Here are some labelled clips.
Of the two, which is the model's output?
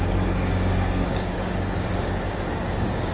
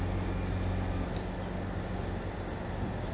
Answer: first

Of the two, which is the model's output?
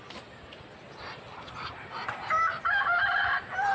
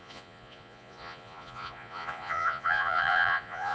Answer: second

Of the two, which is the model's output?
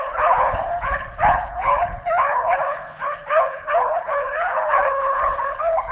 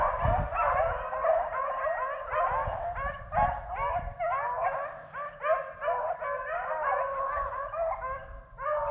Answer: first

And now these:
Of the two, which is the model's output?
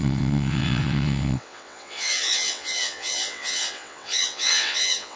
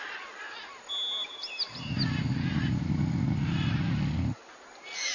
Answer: first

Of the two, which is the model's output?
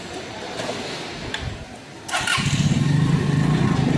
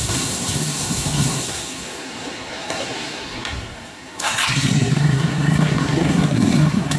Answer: second